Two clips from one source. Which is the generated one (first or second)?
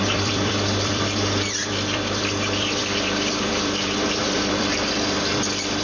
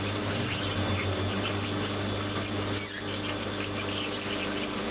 first